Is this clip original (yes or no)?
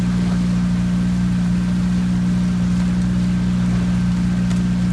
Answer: yes